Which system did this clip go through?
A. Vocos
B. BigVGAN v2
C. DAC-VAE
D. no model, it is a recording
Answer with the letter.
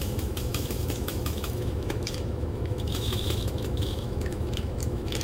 C